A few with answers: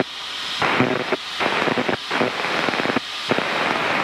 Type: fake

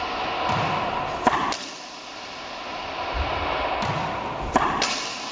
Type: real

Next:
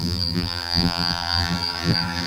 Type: fake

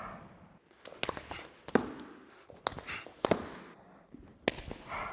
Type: real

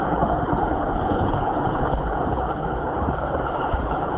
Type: fake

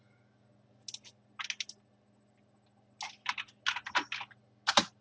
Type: real